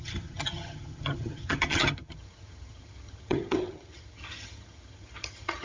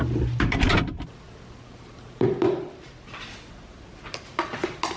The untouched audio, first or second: second